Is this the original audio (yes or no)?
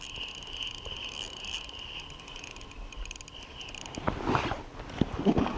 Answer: yes